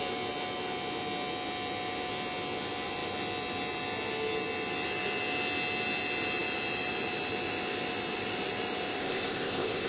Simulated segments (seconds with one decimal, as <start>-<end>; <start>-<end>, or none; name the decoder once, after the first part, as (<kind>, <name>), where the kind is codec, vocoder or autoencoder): 9.0-9.9 (codec, ZipCodec)